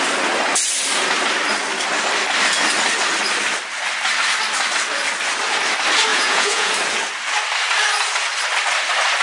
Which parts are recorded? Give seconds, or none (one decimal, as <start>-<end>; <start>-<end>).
0.0-6.1; 6.7-9.2